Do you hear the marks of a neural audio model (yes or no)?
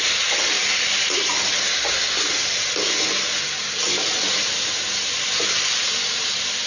no